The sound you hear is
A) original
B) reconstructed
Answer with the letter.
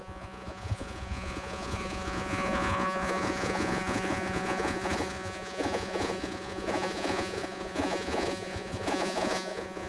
B